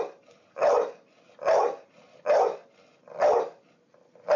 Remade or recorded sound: recorded